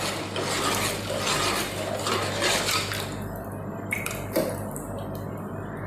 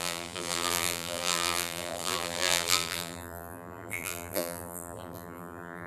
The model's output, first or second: second